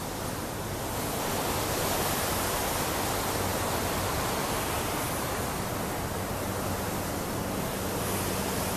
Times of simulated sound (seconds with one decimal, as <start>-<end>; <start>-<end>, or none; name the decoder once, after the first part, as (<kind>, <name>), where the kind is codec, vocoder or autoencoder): none